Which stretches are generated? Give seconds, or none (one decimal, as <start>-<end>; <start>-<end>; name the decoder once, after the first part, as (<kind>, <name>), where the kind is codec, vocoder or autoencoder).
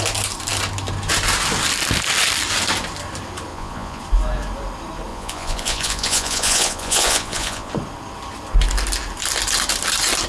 3.5-4.0 (vocoder, Vocos); 5.1-7.7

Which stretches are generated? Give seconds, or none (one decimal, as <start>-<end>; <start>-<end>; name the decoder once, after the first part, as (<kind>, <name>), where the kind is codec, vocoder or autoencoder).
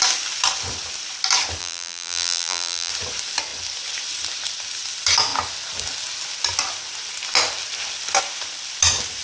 1.6-2.9 (vocoder, BigVGAN v2)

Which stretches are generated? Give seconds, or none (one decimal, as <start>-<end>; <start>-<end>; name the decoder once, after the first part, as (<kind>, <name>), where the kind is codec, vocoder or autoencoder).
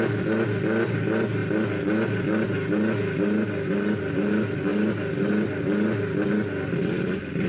none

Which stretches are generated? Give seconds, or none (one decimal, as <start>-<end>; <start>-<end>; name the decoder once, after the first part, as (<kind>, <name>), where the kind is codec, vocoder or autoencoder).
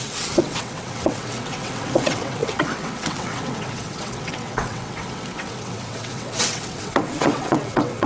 0.0-8.1 (vocoder, WaveNeXt)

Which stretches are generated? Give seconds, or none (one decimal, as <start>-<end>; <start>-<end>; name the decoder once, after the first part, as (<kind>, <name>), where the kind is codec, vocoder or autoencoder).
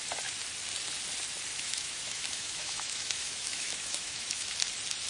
1.5-4.6 (autoencoder, DAC-VAE)